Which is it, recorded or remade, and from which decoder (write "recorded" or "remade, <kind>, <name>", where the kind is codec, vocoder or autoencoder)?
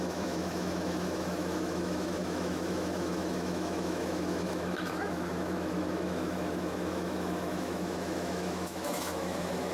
remade, autoencoder, DAC-VAE